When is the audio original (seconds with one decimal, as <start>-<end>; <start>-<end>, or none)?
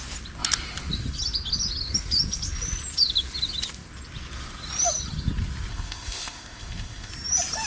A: 0.0-5.7; 7.1-7.7